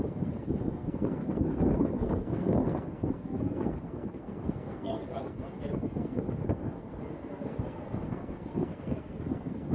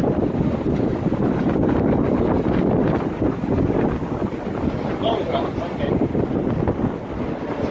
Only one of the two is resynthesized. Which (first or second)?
first